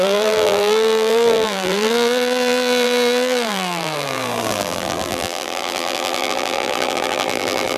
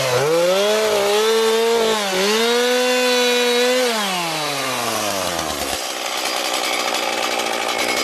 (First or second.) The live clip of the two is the second